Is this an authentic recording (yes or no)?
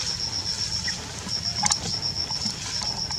yes